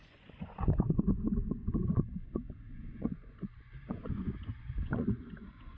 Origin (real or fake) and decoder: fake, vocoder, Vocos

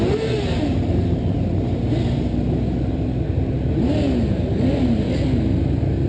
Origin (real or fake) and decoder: real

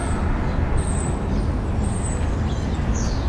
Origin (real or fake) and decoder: real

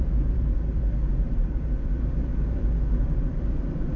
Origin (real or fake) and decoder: fake, vocoder, BigVGAN v2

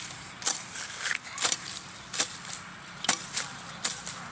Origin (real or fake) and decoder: real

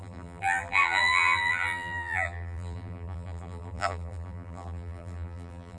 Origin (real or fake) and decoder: fake, vocoder, BigVGAN v2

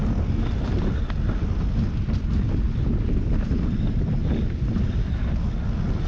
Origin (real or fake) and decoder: real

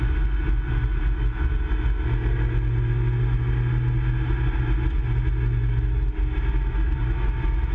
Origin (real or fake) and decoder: real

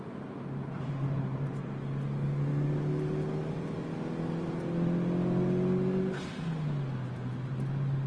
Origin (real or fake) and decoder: real